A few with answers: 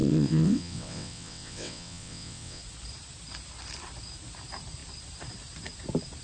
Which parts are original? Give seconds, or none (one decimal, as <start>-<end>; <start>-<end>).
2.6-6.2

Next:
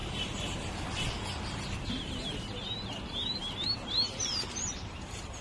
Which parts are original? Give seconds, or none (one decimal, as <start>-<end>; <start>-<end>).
0.0-2.0; 3.3-4.5

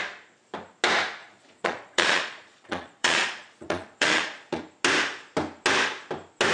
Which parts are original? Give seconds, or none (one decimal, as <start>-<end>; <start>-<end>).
0.0-1.2; 4.6-6.5

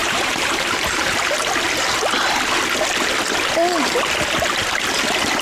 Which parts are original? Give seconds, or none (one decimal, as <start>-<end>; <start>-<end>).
1.2-5.4